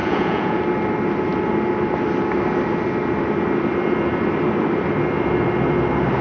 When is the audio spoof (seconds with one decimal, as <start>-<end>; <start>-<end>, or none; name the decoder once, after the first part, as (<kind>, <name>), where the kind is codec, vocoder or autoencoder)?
0.0-0.6 (vocoder, Vocos)